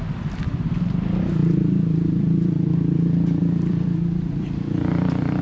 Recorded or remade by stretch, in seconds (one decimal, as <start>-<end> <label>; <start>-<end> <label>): 0.0-5.4 remade